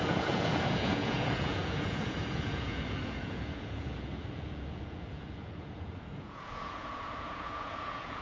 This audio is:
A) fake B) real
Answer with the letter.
A